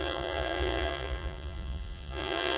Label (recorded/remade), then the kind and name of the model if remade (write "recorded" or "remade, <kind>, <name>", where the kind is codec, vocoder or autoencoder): remade, vocoder, Vocos